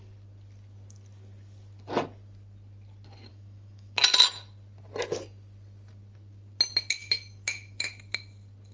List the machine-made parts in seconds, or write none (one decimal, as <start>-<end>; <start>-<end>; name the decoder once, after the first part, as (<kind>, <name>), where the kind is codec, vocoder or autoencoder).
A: 3.3-4.0 (autoencoder, DAC-VAE); 7.0-7.9